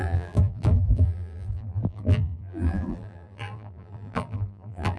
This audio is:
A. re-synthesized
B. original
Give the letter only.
A